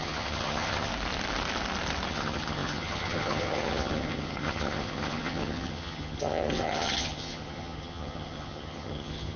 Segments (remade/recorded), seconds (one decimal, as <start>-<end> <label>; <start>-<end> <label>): 0.0-0.9 remade; 0.9-2.1 recorded; 2.1-9.4 remade